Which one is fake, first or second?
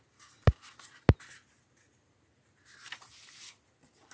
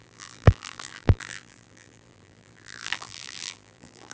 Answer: second